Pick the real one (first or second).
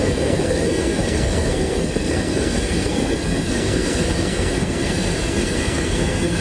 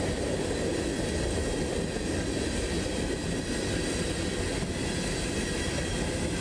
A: second